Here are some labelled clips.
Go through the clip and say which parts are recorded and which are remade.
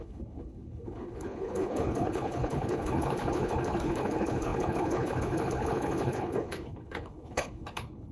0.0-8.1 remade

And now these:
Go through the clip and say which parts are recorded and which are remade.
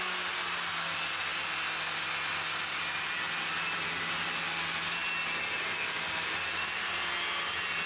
0.0-7.9 recorded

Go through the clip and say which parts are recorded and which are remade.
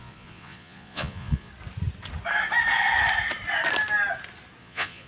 0.0-1.5 remade; 1.5-4.6 recorded; 4.6-5.1 remade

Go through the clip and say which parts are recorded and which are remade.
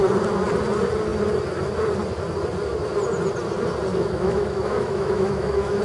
0.0-3.9 recorded; 3.9-5.8 remade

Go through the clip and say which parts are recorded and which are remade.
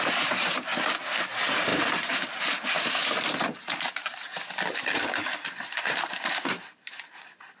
0.0-0.7 remade; 0.7-1.2 recorded; 1.2-7.6 remade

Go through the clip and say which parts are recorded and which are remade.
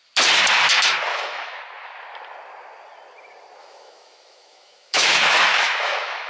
0.0-1.1 recorded; 1.1-1.6 remade; 1.6-3.6 recorded; 3.6-6.3 remade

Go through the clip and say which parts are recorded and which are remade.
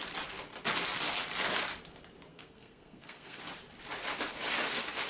0.0-2.3 recorded; 2.3-3.4 remade; 3.4-5.1 recorded